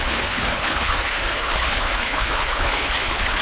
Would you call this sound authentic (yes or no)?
no